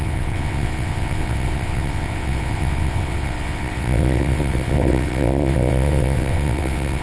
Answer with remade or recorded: remade